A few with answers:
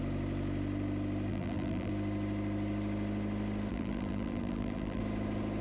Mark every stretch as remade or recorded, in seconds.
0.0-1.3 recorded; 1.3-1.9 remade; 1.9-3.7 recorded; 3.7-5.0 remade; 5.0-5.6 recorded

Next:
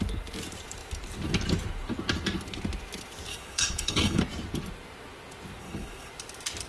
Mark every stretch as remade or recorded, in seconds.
0.0-3.3 recorded; 3.3-4.2 remade; 4.2-5.6 recorded; 5.6-6.1 remade; 6.1-6.7 recorded

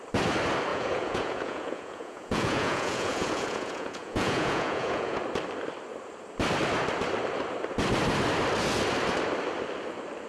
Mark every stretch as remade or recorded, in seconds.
0.0-0.7 recorded; 0.7-5.2 remade; 5.2-10.3 recorded

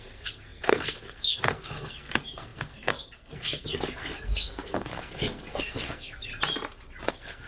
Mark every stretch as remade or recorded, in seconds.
0.0-6.3 remade; 6.3-7.1 recorded; 7.1-7.5 remade